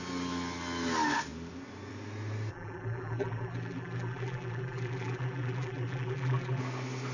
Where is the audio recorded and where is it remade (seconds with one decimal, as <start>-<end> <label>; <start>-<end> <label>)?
0.0-2.5 recorded; 2.5-6.6 remade; 6.6-7.1 recorded